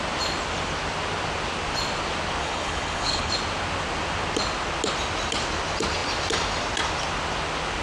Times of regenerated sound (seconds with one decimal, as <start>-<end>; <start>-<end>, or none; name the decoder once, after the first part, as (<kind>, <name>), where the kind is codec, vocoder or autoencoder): 2.4-3.3 (codec, HILCodec)